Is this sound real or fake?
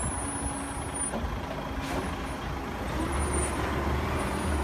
real